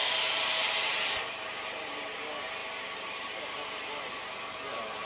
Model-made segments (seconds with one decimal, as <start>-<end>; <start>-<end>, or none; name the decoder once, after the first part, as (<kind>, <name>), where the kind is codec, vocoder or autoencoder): 0.9-1.5 (vocoder, BigVGAN v2); 2.6-4.2